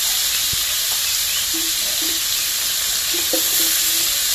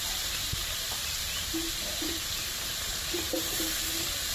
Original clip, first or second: first